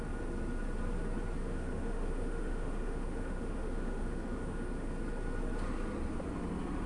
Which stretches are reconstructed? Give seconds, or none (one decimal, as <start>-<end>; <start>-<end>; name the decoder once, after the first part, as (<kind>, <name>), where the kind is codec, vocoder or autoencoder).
1.4-4.9 (autoencoder, DAC-VAE)